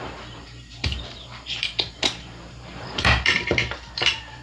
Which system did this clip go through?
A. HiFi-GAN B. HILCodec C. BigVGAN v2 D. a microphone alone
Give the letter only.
C